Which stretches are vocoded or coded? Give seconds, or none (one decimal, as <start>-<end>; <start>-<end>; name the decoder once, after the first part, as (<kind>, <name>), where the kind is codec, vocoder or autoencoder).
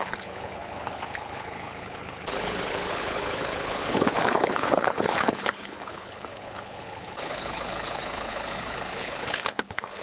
0.0-10.0 (codec, HILCodec)